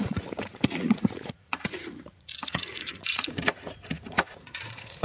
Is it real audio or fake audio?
fake